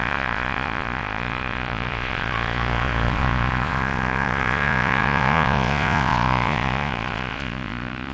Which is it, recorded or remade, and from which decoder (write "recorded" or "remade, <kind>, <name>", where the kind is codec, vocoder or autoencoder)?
remade, vocoder, Vocos